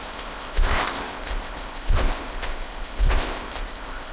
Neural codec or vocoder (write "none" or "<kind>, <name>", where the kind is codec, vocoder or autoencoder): codec, ZipCodec